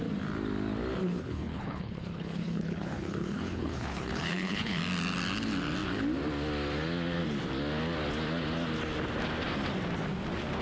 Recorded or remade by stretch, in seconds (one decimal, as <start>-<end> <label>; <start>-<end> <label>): 0.0-1.0 recorded; 1.0-4.8 remade; 4.8-10.6 recorded